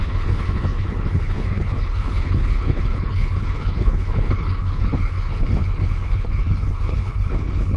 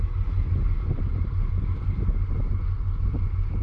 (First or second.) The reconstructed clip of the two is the first